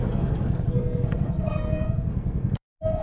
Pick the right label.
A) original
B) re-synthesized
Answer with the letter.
B